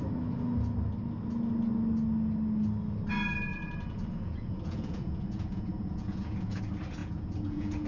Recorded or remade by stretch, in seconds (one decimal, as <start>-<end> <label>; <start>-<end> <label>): 0.0-3.5 recorded; 3.5-6.6 remade; 6.6-7.0 recorded; 7.0-7.9 remade